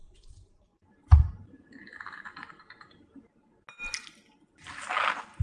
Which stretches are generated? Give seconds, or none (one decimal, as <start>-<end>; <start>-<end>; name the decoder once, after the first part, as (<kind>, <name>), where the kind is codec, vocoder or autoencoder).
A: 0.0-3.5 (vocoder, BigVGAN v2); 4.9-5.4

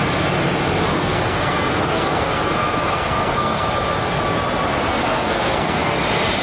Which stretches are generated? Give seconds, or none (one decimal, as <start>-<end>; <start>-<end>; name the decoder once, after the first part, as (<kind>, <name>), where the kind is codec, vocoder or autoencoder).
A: 0.9-3.7 (codec, SNAC); 4.9-6.0

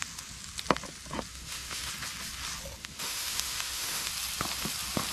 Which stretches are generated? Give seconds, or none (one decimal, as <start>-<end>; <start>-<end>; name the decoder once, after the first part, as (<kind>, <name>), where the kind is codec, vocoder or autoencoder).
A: 1.3-1.9 (autoencoder, DAC-VAE); 2.8-4.1